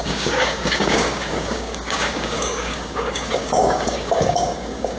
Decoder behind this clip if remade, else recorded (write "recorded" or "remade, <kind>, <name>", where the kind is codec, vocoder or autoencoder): remade, codec, DAC